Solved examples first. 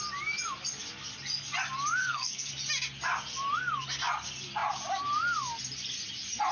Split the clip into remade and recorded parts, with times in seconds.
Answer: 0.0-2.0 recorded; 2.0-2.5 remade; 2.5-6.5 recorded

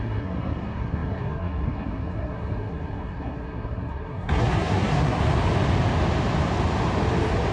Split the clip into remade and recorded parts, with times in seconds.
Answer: 0.0-5.2 remade; 5.2-7.5 recorded

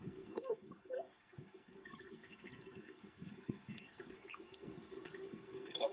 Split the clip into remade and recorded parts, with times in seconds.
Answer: 0.0-5.9 remade

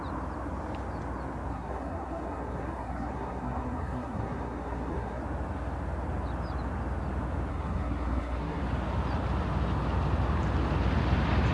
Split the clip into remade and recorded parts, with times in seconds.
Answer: 0.0-1.5 recorded; 1.5-5.2 remade; 5.2-7.5 recorded; 7.5-8.6 remade; 8.6-11.5 recorded